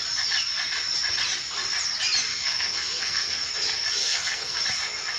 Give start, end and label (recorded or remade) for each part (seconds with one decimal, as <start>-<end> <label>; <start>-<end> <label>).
0.0-2.3 recorded; 2.3-3.5 remade; 3.5-4.0 recorded; 4.0-4.6 remade; 4.6-5.2 recorded